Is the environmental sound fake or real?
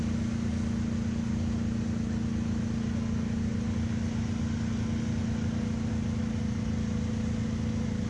real